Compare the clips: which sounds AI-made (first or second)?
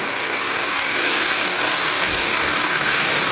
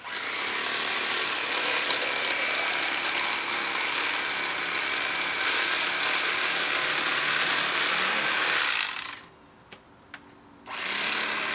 first